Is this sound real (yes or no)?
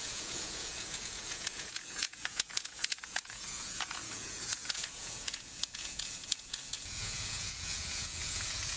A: no